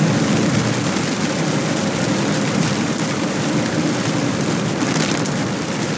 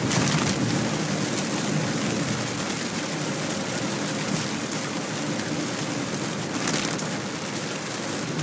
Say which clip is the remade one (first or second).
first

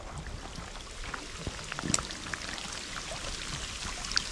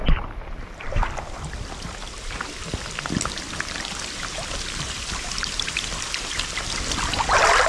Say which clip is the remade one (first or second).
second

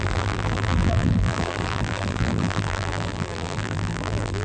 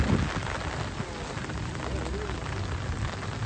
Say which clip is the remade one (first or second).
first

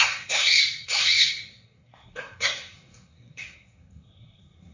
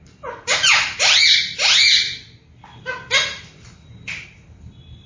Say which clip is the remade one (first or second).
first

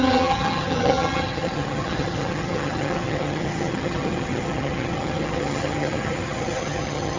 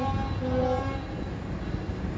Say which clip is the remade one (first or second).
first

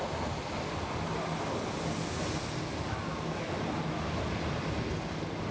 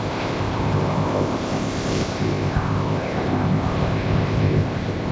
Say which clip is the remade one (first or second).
second